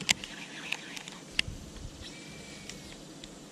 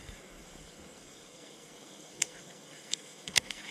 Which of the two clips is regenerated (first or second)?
second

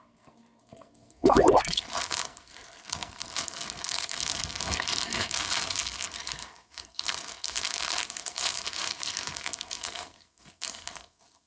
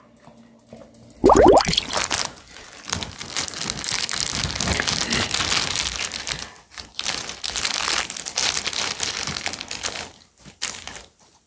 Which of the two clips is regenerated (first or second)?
first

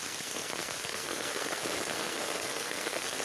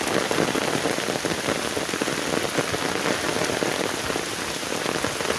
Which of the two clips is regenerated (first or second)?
first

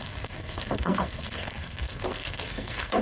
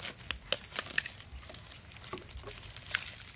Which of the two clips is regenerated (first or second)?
first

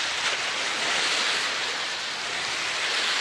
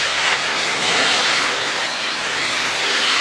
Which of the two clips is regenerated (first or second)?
second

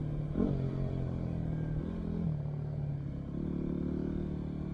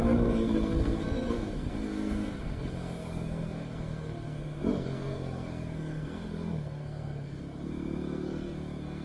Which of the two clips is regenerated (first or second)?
second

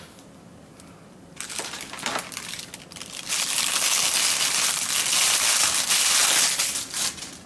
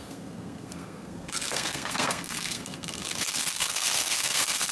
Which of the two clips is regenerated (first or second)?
second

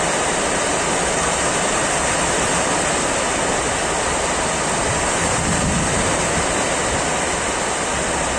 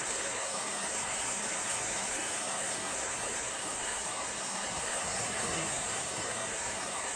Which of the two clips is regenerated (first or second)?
second